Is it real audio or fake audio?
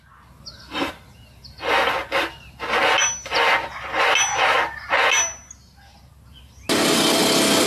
real